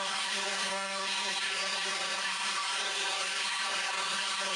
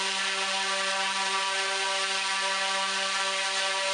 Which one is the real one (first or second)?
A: second